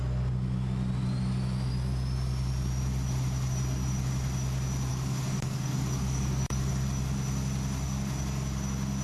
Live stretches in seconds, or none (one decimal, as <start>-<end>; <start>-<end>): 0.0-4.9; 6.7-9.0